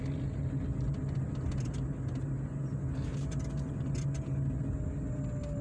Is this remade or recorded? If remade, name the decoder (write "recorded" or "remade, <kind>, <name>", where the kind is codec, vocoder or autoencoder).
recorded